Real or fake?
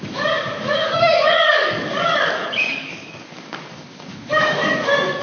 fake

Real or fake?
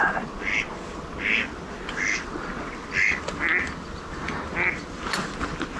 real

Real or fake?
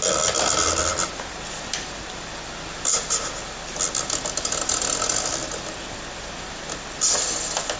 real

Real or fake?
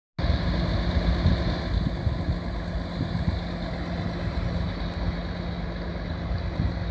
real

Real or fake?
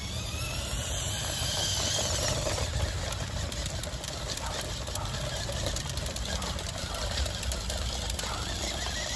real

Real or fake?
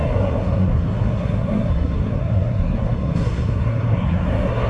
fake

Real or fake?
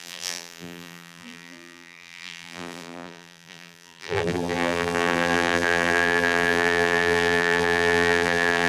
fake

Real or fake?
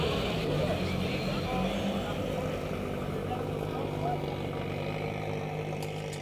real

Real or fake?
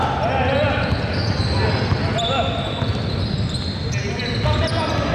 real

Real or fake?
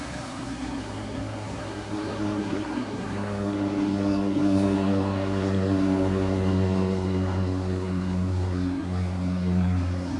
fake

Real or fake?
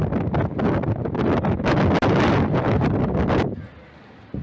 real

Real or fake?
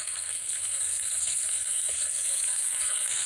fake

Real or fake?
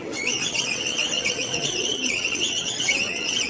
fake